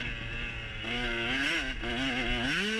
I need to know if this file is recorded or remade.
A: recorded